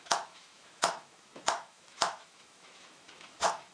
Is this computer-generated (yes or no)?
yes